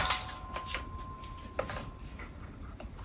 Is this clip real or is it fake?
real